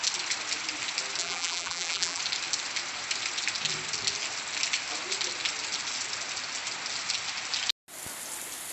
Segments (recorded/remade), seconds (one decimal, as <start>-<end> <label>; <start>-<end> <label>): 0.0-1.2 recorded; 1.2-2.2 remade; 2.2-8.7 recorded